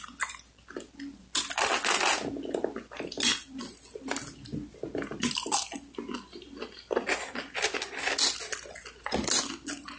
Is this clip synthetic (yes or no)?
no